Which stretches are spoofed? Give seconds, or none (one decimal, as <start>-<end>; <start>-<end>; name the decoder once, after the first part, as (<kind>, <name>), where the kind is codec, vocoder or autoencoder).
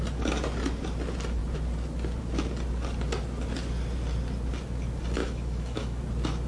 5.2-6.0 (autoencoder, DAC-VAE)